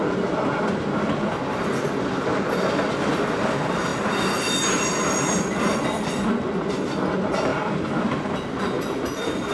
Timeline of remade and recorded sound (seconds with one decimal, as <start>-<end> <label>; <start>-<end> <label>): 0.0-9.5 recorded